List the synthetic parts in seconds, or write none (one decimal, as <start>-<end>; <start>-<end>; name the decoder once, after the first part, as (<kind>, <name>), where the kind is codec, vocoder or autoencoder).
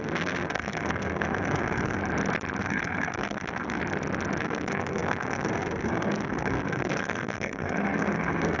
0.0-2.0 (codec, SNAC); 2.6-3.8; 4.4-8.6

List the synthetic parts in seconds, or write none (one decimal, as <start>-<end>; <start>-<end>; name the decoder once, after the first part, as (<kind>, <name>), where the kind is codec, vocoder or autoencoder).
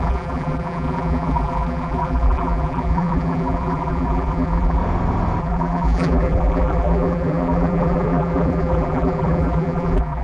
0.0-4.8 (vocoder, BigVGAN v2); 5.4-10.2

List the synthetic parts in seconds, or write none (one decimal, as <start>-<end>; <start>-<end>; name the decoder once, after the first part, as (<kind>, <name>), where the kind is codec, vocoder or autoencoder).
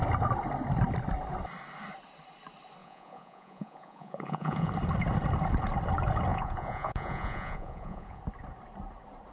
2.8-4.7 (vocoder, Vocos); 6.3-8.2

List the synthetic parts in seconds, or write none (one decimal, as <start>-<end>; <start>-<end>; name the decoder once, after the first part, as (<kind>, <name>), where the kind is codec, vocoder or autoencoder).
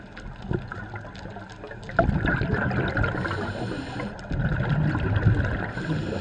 none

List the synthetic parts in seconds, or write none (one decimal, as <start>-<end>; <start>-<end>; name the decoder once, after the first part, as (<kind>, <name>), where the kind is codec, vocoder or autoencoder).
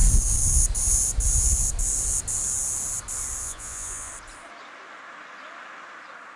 3.4-4.1 (vocoder, Vocos)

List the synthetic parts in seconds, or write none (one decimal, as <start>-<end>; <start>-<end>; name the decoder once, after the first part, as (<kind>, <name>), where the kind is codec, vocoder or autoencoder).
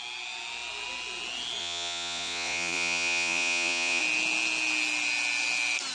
1.6-4.0 (vocoder, Vocos)